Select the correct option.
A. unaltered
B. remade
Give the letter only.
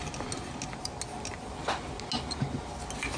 A